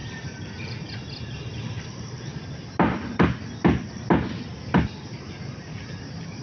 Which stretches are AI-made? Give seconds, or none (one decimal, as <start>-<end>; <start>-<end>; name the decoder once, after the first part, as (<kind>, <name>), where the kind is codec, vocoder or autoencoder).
0.0-0.8 (vocoder, BigVGAN v2)